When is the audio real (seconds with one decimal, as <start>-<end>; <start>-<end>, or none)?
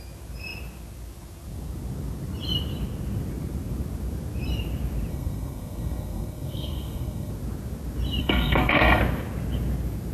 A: 0.0-5.1; 7.3-8.2; 9.0-10.1